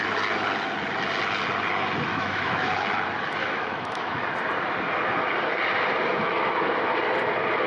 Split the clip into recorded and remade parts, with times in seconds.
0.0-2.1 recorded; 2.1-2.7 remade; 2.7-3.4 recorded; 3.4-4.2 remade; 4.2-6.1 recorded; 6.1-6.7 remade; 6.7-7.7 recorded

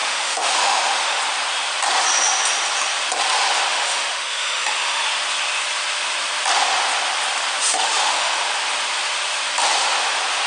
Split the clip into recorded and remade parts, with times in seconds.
0.0-1.2 remade; 1.2-3.7 recorded; 3.7-5.0 remade; 5.0-7.6 recorded; 7.6-8.4 remade; 8.4-10.5 recorded

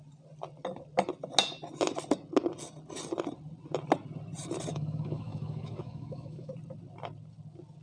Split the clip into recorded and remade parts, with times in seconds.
0.0-4.7 recorded; 4.7-6.5 remade; 6.5-7.8 recorded

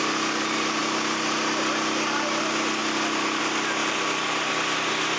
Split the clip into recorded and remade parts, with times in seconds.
0.0-5.2 recorded

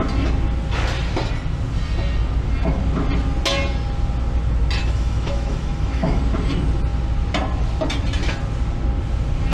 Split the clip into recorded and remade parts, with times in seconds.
0.0-4.8 recorded; 4.8-6.2 remade; 6.2-9.5 recorded

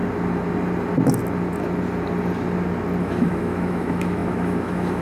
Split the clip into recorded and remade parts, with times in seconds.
0.0-3.0 recorded; 3.0-5.0 remade